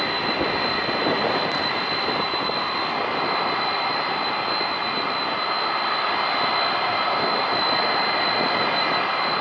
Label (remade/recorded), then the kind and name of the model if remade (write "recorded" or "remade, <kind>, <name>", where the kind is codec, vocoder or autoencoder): recorded